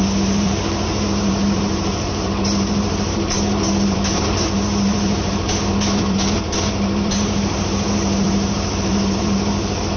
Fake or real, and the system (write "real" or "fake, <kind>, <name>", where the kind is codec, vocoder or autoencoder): fake, vocoder, BigVGAN v2